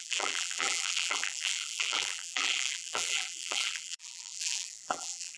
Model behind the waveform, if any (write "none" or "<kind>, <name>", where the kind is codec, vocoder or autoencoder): vocoder, BigVGAN v2